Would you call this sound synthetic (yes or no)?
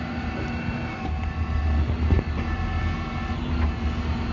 no